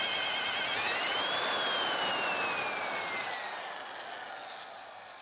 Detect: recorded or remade recorded